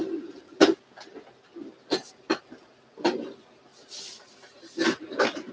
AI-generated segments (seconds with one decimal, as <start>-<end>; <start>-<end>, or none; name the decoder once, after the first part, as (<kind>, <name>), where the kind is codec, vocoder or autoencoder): 3.7-5.5 (vocoder, BigVGAN v2)